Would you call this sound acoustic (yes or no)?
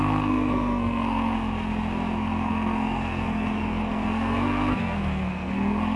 no